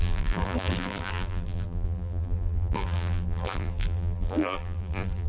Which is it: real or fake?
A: fake